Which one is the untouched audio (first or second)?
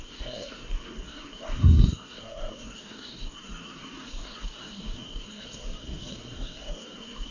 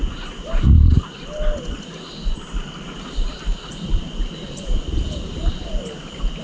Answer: second